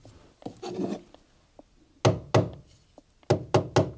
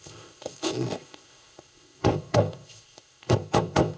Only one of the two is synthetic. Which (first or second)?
second